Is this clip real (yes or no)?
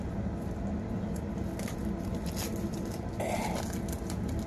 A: yes